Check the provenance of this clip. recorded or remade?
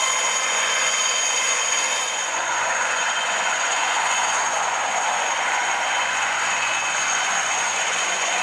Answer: remade